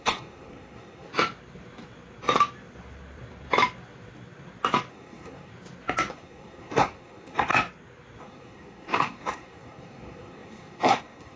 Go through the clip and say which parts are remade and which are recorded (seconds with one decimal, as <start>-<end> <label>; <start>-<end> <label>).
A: 0.0-1.1 remade; 1.1-4.9 recorded; 4.9-5.5 remade; 5.5-6.1 recorded; 6.1-7.5 remade; 7.5-8.2 recorded; 8.2-11.4 remade